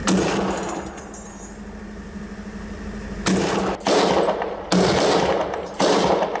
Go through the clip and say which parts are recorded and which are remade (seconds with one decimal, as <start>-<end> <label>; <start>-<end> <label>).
0.0-6.4 recorded